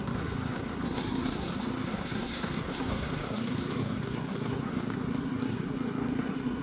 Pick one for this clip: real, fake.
fake